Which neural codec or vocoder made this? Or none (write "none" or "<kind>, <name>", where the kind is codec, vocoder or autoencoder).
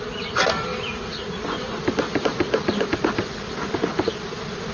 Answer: none